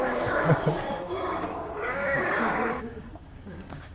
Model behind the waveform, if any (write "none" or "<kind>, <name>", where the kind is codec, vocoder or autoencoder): codec, DAC